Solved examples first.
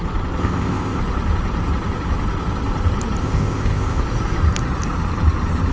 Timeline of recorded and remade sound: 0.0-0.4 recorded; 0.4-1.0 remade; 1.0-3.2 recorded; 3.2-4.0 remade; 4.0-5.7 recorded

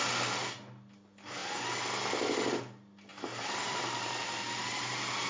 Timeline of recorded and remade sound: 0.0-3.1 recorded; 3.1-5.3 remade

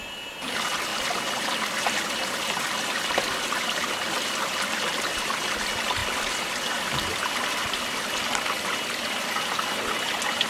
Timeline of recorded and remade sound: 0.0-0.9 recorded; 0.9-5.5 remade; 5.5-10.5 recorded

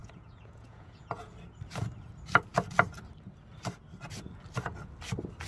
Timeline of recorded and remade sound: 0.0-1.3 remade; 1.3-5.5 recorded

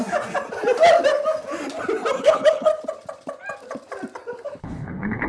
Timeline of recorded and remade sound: 0.0-2.2 recorded; 2.2-2.7 remade; 2.7-4.5 recorded; 4.5-5.3 remade

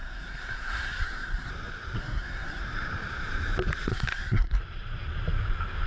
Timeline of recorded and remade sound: 0.0-1.5 remade; 1.5-2.0 recorded; 2.0-2.6 remade; 2.6-3.9 recorded; 3.9-4.6 remade; 4.6-5.9 recorded

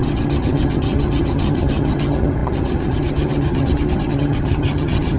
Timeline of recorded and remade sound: 0.0-5.2 remade

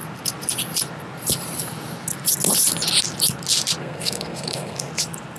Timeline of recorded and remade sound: 0.0-3.8 recorded; 3.8-4.9 remade; 4.9-5.4 recorded